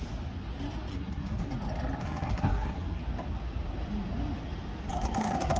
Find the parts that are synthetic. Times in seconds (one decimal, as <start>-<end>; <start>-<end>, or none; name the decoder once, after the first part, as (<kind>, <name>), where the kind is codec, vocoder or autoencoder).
0.9-1.5 (codec, SNAC); 2.0-3.0; 4.9-5.6